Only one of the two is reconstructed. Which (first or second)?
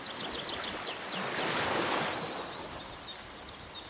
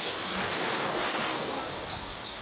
second